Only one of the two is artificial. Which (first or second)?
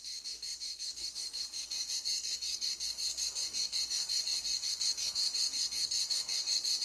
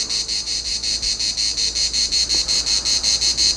first